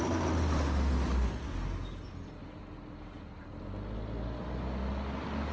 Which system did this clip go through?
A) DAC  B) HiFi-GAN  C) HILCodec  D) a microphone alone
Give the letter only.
D